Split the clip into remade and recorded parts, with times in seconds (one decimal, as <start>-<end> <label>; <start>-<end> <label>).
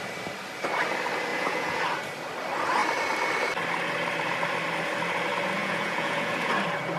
0.0-1.3 recorded; 1.3-1.8 remade; 1.8-5.6 recorded; 5.6-6.5 remade; 6.5-7.0 recorded